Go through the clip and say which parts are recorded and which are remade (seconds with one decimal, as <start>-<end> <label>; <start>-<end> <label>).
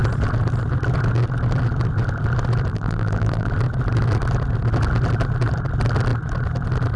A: 0.0-2.7 recorded; 2.7-3.5 remade; 3.5-7.0 recorded